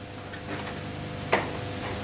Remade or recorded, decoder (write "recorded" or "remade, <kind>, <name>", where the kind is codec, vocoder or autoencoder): recorded